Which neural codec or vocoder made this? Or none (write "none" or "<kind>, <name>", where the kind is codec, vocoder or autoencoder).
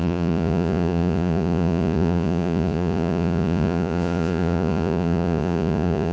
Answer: vocoder, Vocos